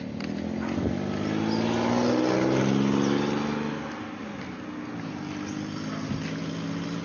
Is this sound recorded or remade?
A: recorded